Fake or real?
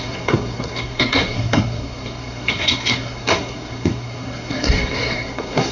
fake